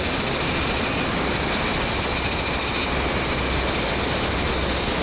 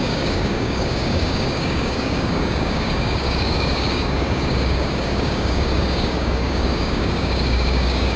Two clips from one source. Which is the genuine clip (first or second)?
first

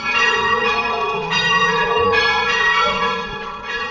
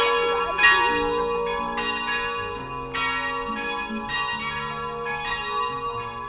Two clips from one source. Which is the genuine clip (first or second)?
second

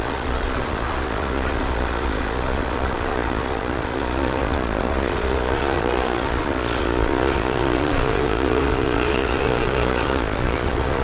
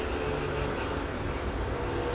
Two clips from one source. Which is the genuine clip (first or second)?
second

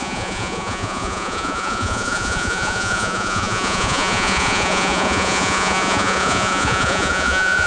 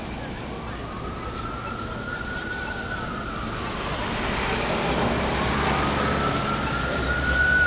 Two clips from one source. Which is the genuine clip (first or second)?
second